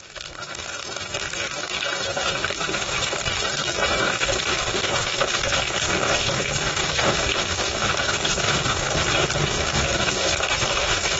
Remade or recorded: remade